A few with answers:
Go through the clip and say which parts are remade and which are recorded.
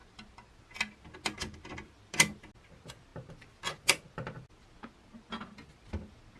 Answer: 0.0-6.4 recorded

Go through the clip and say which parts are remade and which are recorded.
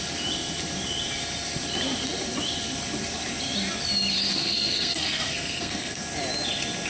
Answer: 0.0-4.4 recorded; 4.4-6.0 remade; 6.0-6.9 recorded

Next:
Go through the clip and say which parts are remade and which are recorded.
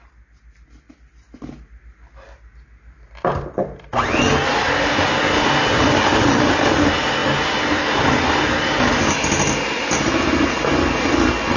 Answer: 0.0-11.6 recorded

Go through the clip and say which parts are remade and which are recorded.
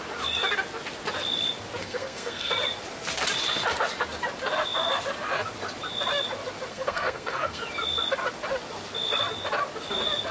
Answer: 0.0-1.8 recorded; 1.8-2.5 remade; 2.5-6.7 recorded; 6.7-7.6 remade; 7.6-10.3 recorded